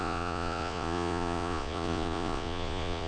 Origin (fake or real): fake